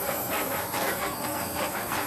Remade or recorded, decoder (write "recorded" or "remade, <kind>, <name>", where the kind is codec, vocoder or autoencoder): remade, codec, SNAC